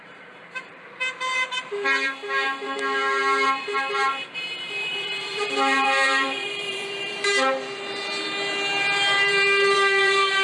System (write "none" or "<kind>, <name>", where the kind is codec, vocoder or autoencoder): vocoder, BigVGAN v2